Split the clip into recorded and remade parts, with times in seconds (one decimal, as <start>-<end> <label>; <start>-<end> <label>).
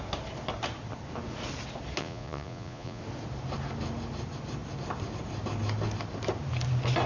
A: 0.0-2.0 recorded; 2.0-3.0 remade; 3.0-7.1 recorded